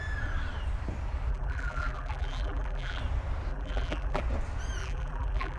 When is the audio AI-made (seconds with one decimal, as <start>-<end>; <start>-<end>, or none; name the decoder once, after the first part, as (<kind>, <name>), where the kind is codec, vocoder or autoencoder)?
1.3-3.0 (vocoder, BigVGAN v2); 3.5-4.2; 4.8-5.6